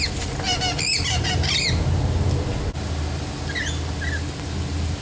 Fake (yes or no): no